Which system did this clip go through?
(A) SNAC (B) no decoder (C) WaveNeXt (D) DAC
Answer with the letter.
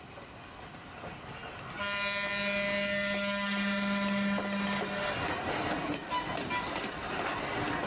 B